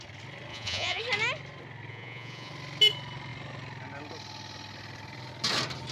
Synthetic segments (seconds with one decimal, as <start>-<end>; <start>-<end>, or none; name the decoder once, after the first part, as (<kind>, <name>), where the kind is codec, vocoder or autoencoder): 0.5-1.0 (vocoder, Vocos); 1.9-2.5